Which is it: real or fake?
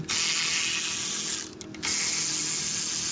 real